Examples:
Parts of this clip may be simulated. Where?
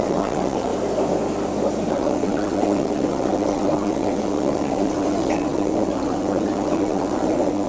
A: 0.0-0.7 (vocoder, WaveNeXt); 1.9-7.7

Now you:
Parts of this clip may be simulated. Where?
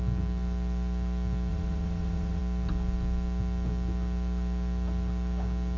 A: 1.5-2.4 (vocoder, WaveNeXt)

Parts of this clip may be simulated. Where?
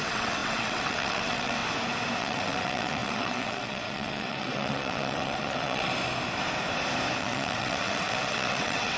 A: 0.0-1.6 (vocoder, WaveNeXt); 2.2-5.9; 7.2-9.0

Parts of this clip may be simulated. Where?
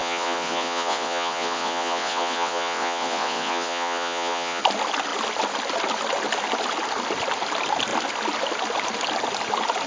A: 0.0-4.6 (vocoder, WaveNeXt)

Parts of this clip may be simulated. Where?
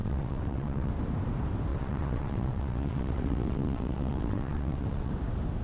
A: 0.0-0.9 (vocoder, WaveNeXt); 1.7-5.1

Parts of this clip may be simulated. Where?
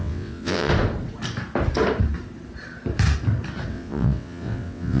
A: 0.0-0.7 (vocoder, WaveNeXt); 3.7-5.0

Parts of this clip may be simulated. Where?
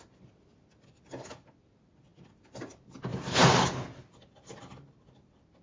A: none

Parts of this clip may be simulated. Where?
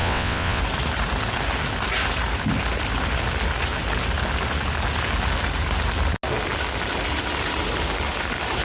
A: 0.0-0.6 (vocoder, WaveNeXt)